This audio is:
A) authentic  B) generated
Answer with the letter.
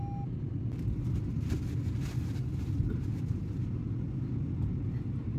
A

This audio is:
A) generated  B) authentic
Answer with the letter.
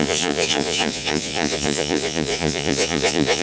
A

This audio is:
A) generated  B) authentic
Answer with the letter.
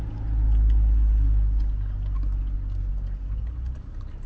B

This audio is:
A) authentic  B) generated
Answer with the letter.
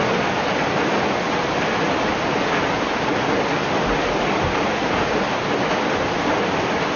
A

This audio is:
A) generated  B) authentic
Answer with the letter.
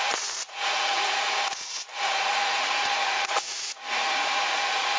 A